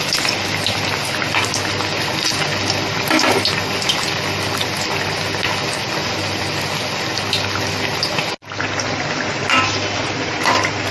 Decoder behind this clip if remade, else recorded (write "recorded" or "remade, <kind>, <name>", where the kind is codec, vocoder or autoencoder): recorded